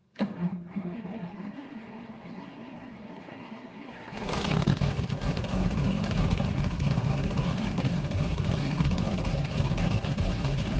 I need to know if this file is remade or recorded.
remade